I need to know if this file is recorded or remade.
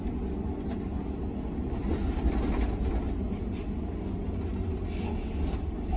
recorded